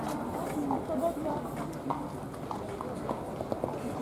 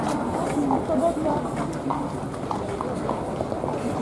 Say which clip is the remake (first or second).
second